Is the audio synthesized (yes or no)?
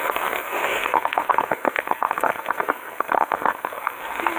yes